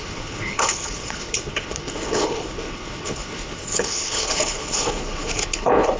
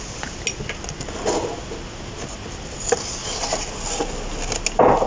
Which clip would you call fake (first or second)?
first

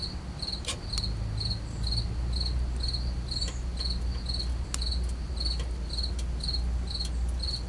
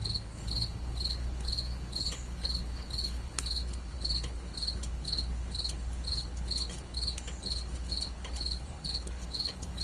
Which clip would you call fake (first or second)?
second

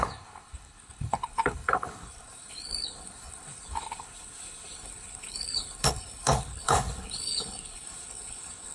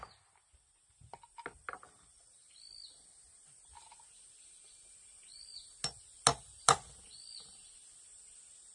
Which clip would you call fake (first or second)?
first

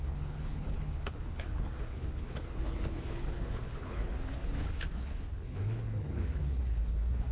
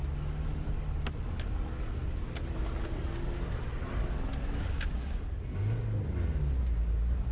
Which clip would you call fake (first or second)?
first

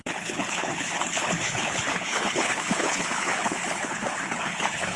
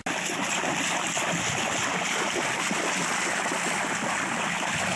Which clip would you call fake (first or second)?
first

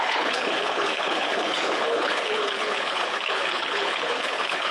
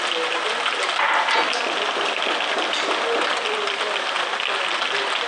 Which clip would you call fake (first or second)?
first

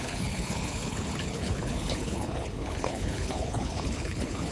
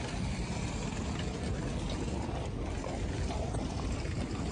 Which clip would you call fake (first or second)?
first